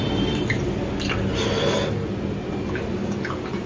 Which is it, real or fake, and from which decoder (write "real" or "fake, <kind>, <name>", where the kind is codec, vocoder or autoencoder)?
real